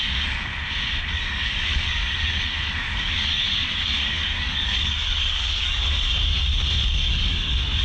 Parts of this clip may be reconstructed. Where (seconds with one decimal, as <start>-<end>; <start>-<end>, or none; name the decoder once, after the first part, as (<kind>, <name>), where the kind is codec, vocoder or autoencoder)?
0.0-0.5 (codec, DAC); 1.1-7.8